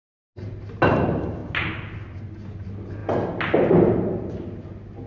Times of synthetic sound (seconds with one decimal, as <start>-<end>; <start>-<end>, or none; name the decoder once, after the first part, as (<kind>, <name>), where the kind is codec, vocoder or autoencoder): none